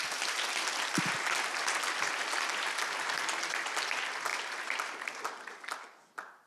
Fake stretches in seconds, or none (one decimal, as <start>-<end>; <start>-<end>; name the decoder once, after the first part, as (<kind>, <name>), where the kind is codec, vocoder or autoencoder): none